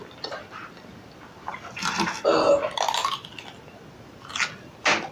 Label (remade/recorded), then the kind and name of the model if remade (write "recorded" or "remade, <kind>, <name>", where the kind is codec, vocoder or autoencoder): recorded